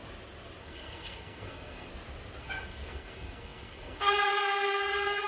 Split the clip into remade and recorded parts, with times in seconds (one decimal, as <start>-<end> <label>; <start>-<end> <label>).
0.0-0.6 recorded; 0.6-1.9 remade; 1.9-2.4 recorded; 2.4-5.3 remade